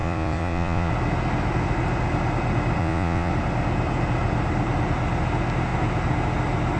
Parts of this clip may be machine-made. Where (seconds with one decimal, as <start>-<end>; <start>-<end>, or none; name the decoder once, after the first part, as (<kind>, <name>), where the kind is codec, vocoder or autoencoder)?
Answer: 0.0-0.9 (vocoder, Vocos); 2.8-3.3